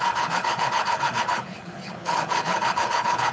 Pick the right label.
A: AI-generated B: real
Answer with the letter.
A